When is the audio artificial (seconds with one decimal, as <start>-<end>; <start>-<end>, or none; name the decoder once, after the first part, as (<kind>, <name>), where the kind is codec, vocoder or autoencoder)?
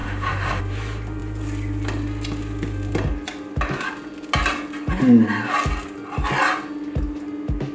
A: 0.0-0.6 (autoencoder, DAC-VAE)